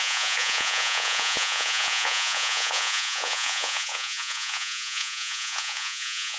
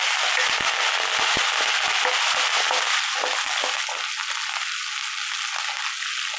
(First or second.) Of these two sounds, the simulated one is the first